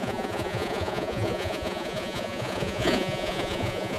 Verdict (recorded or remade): remade